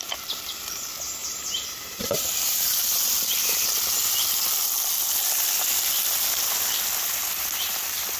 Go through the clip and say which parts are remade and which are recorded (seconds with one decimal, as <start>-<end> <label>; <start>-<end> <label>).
0.0-1.2 recorded; 1.2-3.1 remade; 3.1-8.2 recorded